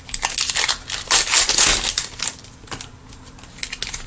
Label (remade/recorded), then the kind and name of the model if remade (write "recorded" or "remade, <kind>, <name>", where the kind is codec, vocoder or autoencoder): recorded